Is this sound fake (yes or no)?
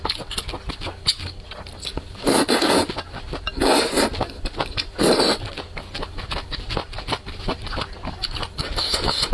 no